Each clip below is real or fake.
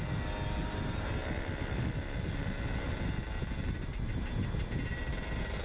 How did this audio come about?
real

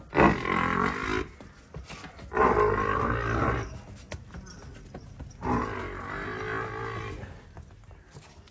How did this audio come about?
real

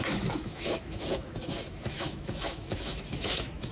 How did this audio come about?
fake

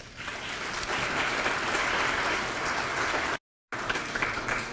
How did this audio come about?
real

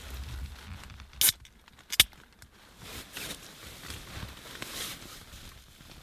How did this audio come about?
real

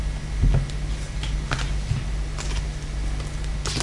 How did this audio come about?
real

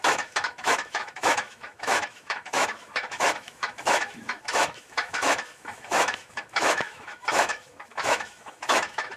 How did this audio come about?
fake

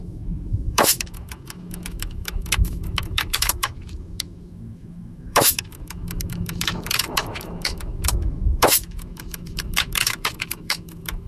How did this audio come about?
fake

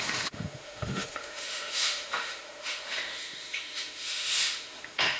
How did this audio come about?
fake